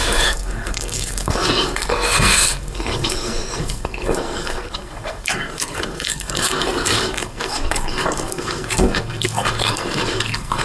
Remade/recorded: remade